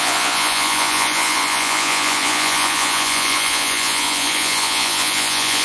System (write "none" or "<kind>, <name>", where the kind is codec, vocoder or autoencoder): vocoder, Vocos